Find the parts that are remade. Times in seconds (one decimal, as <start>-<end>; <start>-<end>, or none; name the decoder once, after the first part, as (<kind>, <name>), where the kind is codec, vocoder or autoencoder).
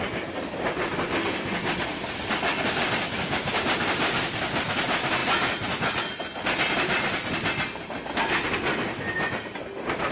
1.9-3.8 (vocoder, BigVGAN v2)